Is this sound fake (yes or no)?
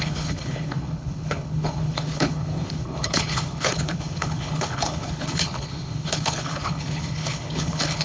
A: yes